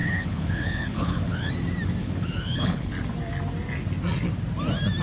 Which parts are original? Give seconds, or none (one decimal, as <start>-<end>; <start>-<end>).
1.5-2.0; 2.9-5.0